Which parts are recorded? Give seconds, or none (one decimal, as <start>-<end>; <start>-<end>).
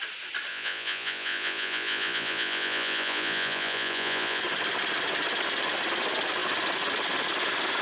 0.0-0.5; 4.4-7.8